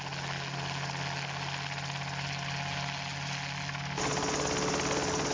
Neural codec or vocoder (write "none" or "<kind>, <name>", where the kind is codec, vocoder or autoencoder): none